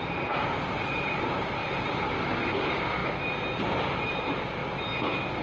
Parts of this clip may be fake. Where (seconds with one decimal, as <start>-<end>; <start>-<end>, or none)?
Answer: 0.0-1.6; 2.5-3.0; 4.0-4.6